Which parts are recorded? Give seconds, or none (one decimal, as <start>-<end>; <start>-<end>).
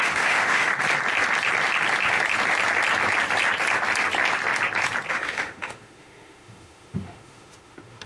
0.7-5.1